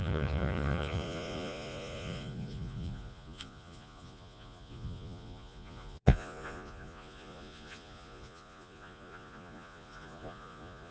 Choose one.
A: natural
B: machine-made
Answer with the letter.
B